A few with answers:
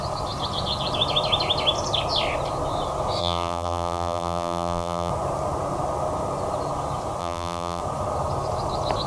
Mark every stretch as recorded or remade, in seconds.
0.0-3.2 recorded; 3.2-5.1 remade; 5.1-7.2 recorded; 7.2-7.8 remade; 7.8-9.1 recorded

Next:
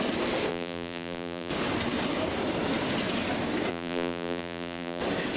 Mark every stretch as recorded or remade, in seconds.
0.0-0.5 recorded; 0.5-1.5 remade; 1.5-3.7 recorded; 3.7-5.0 remade; 5.0-5.4 recorded

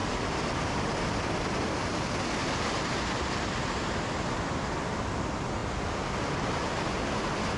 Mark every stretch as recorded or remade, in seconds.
0.0-7.6 recorded

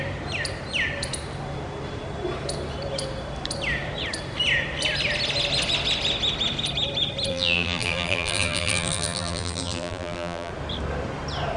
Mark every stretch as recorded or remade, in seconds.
0.0-7.3 recorded; 7.3-10.5 remade; 10.5-11.6 recorded